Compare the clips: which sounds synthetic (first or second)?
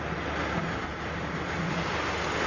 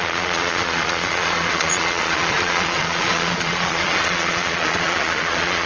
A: second